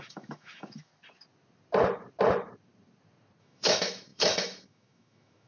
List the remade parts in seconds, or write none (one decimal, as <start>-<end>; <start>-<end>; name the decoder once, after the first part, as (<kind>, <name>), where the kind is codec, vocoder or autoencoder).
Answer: 0.0-0.9 (autoencoder, DAC-VAE); 3.4-5.5